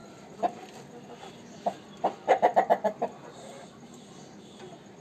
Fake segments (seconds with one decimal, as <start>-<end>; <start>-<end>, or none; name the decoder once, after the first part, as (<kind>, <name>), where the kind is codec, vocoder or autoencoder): none